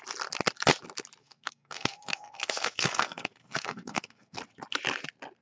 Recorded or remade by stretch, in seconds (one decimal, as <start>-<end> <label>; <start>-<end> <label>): 0.0-1.2 recorded; 1.2-4.4 remade; 4.4-5.4 recorded